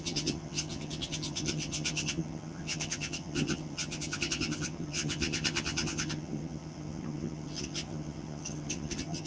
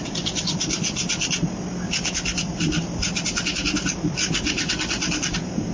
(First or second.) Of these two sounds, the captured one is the second